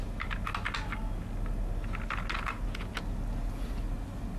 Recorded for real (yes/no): yes